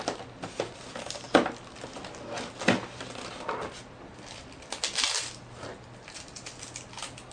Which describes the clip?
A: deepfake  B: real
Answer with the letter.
B